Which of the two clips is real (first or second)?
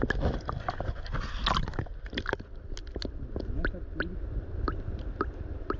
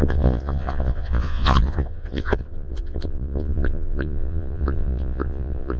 first